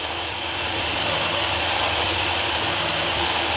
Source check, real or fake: real